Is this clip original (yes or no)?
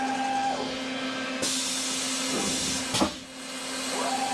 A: yes